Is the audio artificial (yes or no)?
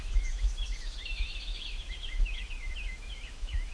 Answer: yes